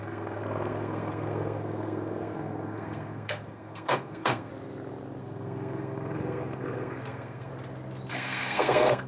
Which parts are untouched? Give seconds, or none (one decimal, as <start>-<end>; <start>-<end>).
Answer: 4.5-5.2; 7.5-8.1